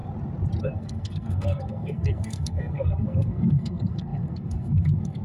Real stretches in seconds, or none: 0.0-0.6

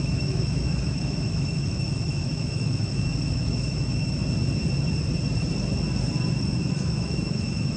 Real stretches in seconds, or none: 4.2-6.7

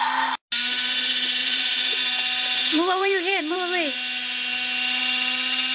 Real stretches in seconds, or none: 0.0-1.4; 2.0-2.6; 3.4-5.7

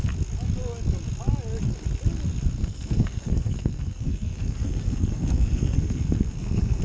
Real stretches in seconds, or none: 0.0-2.6